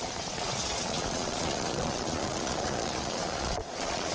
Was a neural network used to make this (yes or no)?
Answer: yes